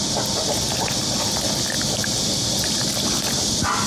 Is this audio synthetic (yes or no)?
no